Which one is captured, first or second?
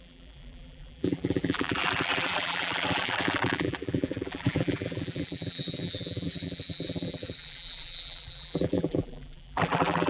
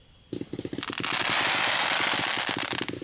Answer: second